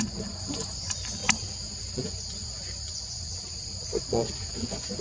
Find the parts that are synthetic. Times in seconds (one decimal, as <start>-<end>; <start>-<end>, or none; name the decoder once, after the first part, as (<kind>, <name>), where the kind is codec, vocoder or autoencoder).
0.0-1.2 (vocoder, Vocos); 1.8-3.3; 4.0-5.0